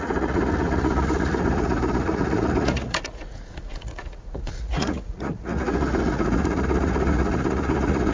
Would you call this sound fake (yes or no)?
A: yes